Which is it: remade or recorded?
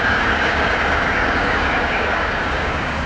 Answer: remade